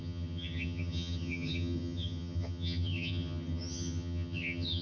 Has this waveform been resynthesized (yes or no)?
yes